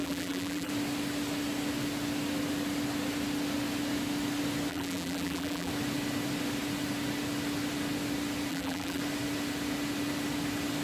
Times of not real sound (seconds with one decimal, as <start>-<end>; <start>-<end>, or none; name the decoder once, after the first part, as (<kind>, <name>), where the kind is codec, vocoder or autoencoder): 0.0-0.7 (vocoder, BigVGAN v2); 4.7-5.7; 8.5-9.0